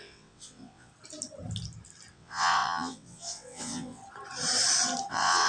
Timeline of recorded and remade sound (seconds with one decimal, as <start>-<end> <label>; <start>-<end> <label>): 0.0-0.9 remade; 0.9-2.1 recorded; 2.1-4.0 remade; 4.0-5.1 recorded; 5.1-5.5 remade

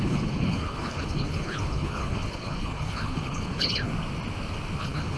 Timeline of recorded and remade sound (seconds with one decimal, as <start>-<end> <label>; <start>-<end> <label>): 0.0-3.9 remade; 3.9-4.8 recorded; 4.8-5.2 remade

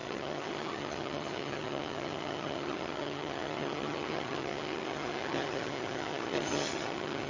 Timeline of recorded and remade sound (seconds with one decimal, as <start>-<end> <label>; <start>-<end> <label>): 0.0-7.3 remade

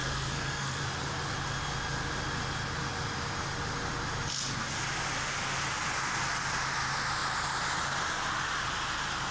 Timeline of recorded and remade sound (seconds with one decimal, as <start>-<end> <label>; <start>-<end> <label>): 0.0-0.8 remade; 0.8-9.3 recorded

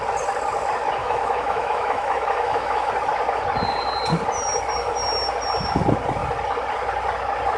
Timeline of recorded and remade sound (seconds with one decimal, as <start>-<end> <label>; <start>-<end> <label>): 0.0-1.0 recorded; 1.0-2.9 remade; 2.9-7.6 recorded